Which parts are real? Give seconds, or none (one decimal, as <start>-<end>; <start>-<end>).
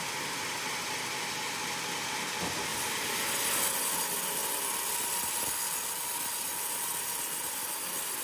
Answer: 0.0-2.7; 3.6-8.2